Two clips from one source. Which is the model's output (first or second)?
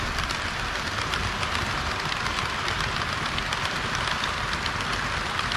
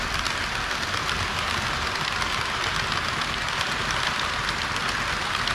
first